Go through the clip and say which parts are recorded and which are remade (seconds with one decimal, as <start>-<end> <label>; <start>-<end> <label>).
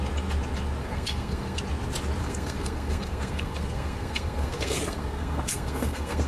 0.0-0.8 recorded; 0.8-1.6 remade; 1.6-2.2 recorded; 2.2-6.3 remade